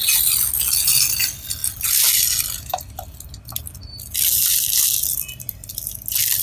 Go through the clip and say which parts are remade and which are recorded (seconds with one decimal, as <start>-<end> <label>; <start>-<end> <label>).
0.0-6.4 recorded